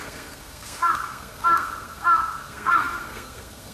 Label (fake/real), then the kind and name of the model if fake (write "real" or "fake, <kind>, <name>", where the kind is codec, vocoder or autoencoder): fake, codec, SNAC